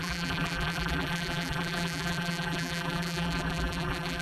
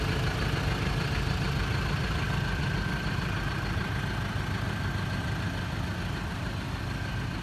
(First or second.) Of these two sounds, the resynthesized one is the first